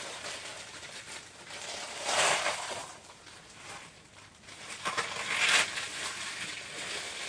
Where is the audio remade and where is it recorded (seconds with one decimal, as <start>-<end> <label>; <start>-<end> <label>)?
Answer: 0.0-0.5 recorded; 0.5-4.9 remade; 4.9-7.3 recorded